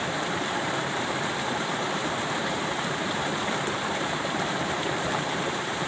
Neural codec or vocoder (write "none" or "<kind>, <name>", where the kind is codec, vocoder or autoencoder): vocoder, BigVGAN v2